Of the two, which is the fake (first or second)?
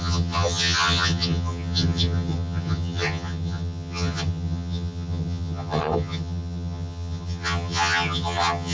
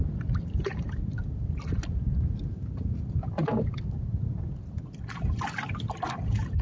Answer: first